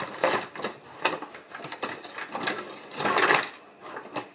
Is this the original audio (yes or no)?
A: yes